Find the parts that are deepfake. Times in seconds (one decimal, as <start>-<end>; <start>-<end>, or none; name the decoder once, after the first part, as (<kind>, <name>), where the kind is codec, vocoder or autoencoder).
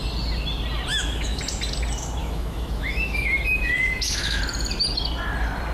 0.9-1.4 (autoencoder, DAC-VAE); 2.2-4.4